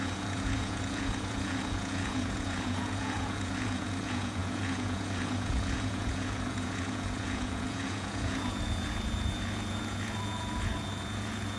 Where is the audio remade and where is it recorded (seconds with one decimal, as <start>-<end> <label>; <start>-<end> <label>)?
0.0-11.6 remade